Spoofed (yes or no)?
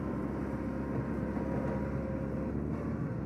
no